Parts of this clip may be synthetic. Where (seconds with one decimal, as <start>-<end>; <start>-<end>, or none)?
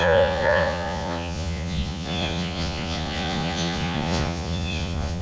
0.0-5.2